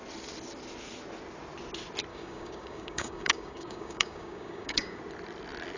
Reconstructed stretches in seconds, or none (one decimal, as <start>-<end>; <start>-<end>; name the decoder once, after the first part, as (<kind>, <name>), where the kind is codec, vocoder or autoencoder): 2.1-5.0 (codec, DAC)